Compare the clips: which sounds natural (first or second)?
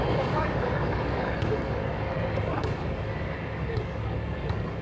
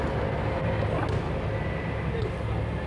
second